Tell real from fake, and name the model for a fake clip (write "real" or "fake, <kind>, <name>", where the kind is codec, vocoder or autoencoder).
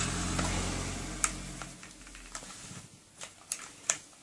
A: real